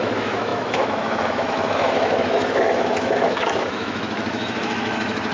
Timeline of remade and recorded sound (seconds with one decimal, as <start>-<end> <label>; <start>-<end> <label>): 0.0-5.3 remade